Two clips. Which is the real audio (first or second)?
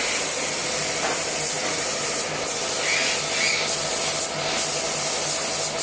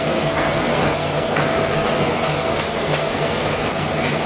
first